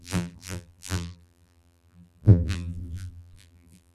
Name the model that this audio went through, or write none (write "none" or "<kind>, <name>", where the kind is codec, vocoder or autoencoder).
vocoder, BigVGAN v2